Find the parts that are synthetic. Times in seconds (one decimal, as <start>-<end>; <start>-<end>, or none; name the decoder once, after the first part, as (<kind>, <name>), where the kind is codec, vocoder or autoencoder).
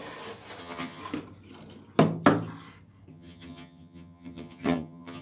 0.6-1.0 (vocoder, HiFi-GAN); 3.1-5.2